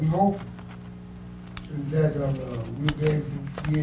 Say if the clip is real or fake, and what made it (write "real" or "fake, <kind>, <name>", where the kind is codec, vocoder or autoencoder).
real